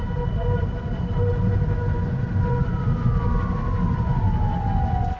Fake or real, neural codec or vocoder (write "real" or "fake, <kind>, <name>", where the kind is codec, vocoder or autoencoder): real